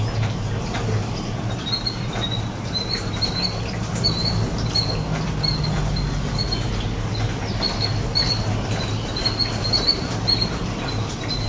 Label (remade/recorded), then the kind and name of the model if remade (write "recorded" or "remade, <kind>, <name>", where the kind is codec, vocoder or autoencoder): recorded